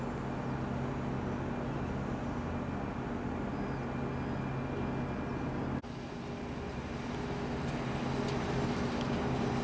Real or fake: real